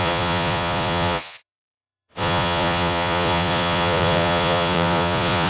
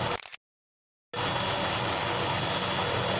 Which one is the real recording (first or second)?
second